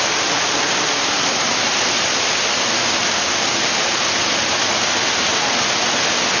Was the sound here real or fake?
real